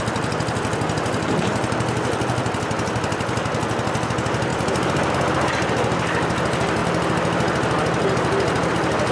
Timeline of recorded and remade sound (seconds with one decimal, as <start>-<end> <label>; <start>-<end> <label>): 0.0-9.1 recorded

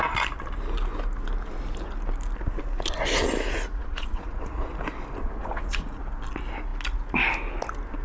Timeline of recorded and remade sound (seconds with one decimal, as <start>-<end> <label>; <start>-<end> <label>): 0.0-3.7 recorded; 3.7-4.7 remade; 4.7-5.2 recorded; 5.2-6.0 remade; 6.0-8.0 recorded

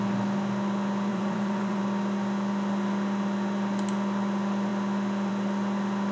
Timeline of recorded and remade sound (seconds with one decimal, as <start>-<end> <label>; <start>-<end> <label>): 0.0-1.1 recorded; 1.1-1.8 remade; 1.8-6.1 recorded

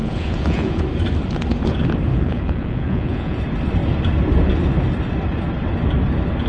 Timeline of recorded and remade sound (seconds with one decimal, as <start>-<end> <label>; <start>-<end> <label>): 0.0-0.8 remade; 0.8-2.1 recorded; 2.1-3.4 remade; 3.4-6.5 recorded

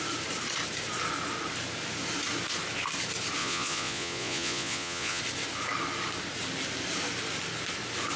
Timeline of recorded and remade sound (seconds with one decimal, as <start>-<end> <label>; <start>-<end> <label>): 0.0-3.4 recorded; 3.4-5.2 remade; 5.2-8.2 recorded

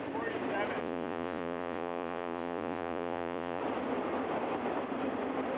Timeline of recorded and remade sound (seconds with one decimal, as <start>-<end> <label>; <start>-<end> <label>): 0.0-0.8 recorded; 0.8-3.6 remade; 3.6-5.6 recorded

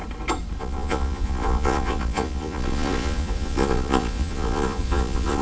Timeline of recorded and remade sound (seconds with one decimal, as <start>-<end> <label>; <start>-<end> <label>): 0.0-0.6 recorded; 0.6-5.4 remade

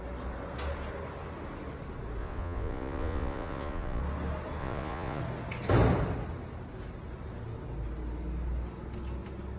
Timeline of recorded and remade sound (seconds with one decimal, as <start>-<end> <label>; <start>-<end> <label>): 0.0-2.2 recorded; 2.2-4.0 remade; 4.0-4.6 recorded; 4.6-5.2 remade; 5.2-9.6 recorded